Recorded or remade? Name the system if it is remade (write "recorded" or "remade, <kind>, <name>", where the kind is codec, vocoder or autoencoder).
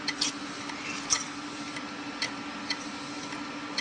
recorded